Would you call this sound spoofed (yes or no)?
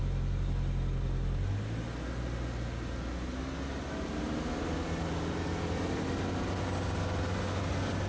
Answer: no